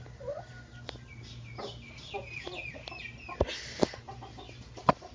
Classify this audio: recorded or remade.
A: recorded